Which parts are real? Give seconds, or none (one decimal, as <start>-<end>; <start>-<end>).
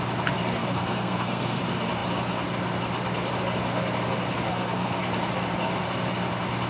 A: 0.0-0.6; 1.6-4.5; 5.0-6.7